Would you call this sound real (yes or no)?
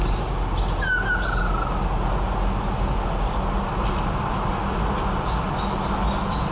yes